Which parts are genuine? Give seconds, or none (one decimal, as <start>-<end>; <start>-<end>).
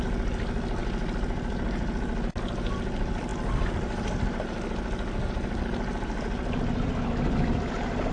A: 0.0-8.1